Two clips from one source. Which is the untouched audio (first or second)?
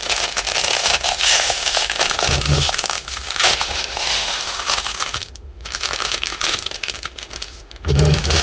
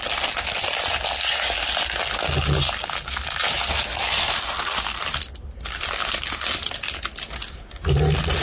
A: second